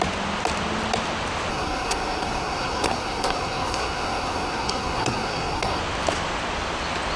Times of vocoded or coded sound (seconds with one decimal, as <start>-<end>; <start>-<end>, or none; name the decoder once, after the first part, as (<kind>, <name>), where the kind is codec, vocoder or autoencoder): 1.5-5.8 (codec, SNAC)